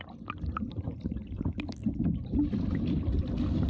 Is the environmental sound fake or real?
real